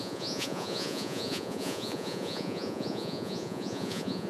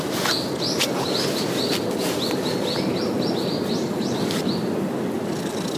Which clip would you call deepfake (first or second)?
first